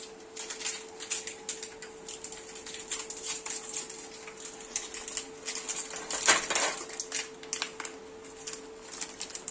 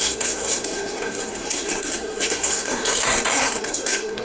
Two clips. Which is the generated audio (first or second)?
second